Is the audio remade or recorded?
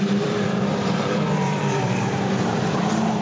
remade